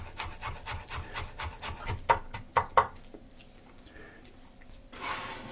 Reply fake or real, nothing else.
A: real